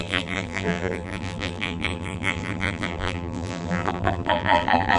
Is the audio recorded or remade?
remade